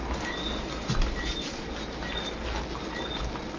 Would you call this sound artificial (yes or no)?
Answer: no